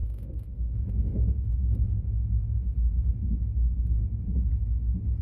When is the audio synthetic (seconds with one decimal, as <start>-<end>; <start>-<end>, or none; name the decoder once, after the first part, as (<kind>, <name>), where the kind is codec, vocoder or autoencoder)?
0.0-3.1 (autoencoder, DAC-VAE)

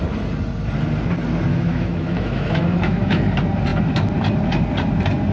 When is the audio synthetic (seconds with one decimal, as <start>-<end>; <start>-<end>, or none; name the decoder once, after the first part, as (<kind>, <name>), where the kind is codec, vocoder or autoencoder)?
1.5-3.2 (autoencoder, DAC-VAE)

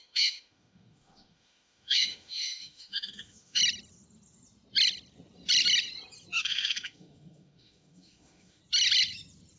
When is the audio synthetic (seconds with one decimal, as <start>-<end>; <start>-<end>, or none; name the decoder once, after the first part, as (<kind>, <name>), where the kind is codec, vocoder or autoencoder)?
0.0-3.6 (autoencoder, DAC-VAE); 6.4-8.6

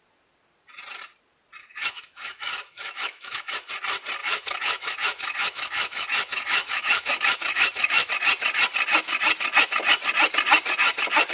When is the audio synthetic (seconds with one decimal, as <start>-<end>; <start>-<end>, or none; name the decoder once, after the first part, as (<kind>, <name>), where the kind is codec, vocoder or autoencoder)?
1.6-3.7 (autoencoder, DAC-VAE); 4.2-8.1

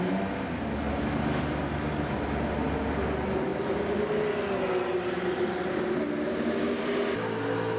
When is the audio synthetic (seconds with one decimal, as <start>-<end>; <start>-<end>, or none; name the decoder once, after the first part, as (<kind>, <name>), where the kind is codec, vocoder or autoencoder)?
none